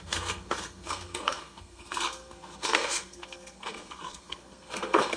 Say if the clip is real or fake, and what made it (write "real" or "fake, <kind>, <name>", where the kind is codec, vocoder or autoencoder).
fake, codec, SNAC